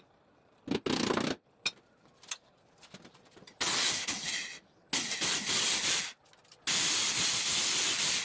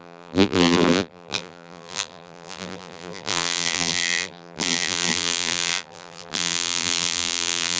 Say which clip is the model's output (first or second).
second